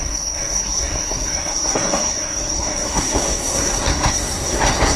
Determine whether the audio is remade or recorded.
remade